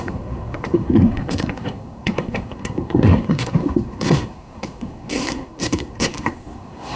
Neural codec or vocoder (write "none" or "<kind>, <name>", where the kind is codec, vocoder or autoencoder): codec, SNAC